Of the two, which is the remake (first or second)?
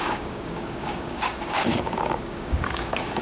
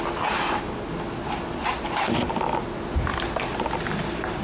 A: first